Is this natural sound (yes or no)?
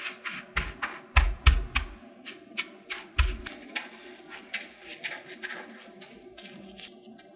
yes